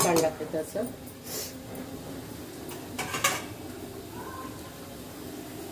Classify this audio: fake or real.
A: real